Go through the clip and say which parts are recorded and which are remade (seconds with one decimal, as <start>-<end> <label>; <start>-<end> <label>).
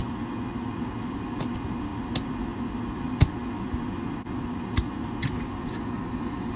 0.0-6.6 recorded